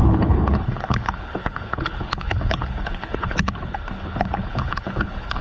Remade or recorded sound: remade